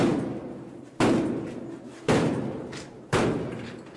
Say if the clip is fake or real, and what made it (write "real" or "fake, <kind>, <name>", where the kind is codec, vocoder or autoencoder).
real